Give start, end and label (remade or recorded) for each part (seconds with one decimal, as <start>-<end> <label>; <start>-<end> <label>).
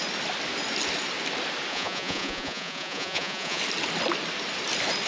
0.0-1.7 recorded; 1.7-3.6 remade; 3.6-5.1 recorded